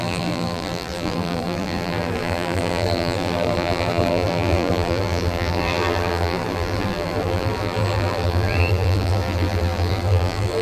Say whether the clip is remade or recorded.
remade